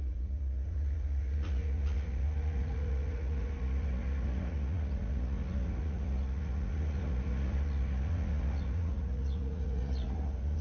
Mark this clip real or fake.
fake